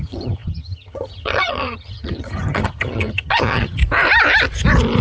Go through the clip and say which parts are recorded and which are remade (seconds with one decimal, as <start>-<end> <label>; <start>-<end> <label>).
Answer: 0.0-3.8 remade; 3.8-5.0 recorded